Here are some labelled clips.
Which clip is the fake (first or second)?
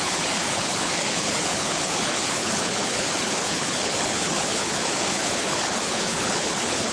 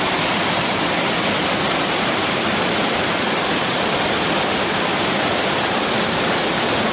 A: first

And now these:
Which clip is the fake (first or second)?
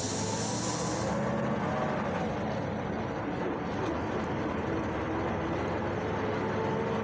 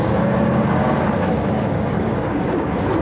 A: second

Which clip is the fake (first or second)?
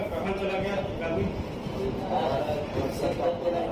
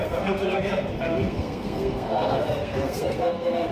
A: second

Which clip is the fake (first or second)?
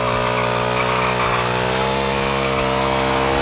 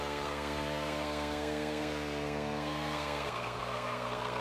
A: second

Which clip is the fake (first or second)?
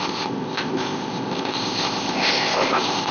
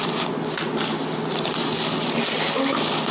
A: first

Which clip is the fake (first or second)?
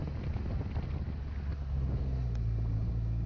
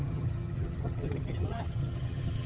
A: second